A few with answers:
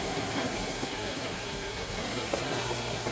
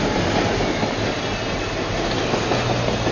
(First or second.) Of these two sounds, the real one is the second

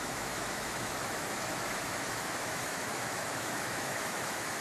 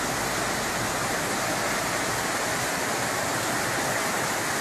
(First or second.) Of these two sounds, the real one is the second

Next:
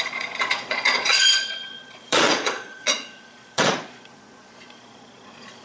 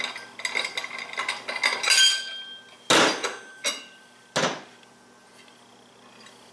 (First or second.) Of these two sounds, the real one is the second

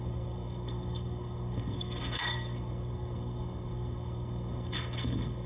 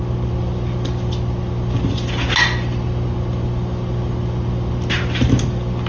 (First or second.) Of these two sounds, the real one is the second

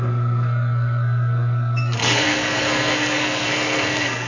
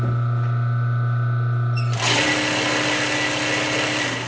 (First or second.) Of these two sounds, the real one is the second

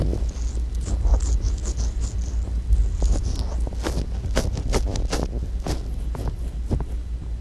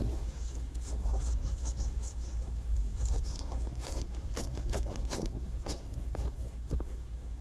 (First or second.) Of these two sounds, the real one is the first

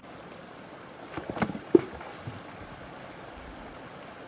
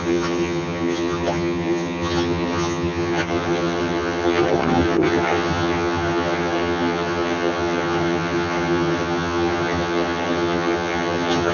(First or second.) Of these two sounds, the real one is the first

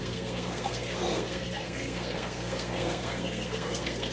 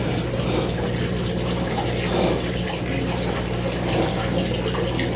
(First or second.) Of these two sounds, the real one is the second